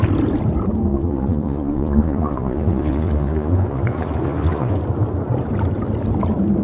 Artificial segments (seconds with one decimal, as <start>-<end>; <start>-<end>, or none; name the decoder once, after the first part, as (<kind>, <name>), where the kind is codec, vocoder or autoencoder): 0.9-4.8 (vocoder, Vocos)